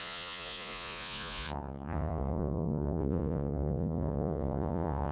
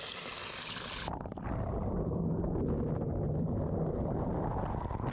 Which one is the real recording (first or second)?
second